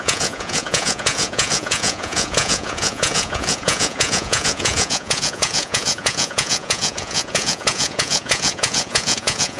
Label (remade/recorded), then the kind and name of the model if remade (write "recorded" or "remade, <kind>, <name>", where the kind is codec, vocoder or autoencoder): remade, vocoder, Vocos